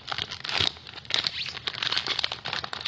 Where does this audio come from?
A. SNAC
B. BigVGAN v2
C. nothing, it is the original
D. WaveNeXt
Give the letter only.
C